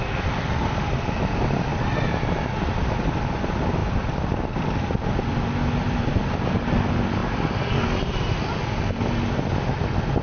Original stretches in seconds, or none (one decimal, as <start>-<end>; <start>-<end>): 0.0-1.7; 2.8-10.2